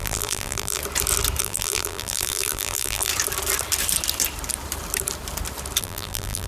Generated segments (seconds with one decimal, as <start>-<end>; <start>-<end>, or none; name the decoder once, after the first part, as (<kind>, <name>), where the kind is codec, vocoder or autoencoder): 0.0-0.8 (vocoder, BigVGAN v2); 1.4-3.1; 5.8-6.5